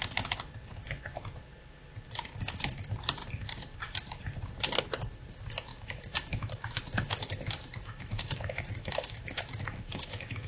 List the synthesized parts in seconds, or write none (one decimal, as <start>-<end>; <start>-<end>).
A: 5.7-10.5